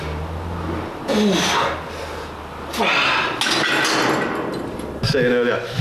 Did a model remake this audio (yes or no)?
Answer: no